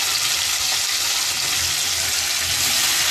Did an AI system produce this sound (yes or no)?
no